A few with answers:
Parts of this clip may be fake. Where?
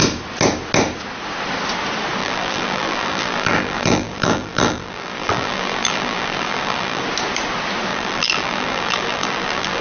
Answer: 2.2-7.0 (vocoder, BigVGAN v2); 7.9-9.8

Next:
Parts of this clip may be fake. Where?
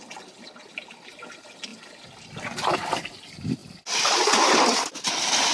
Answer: none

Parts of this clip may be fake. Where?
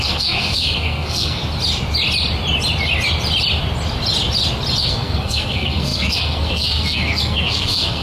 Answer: 0.0-1.4 (codec, SNAC); 4.8-8.0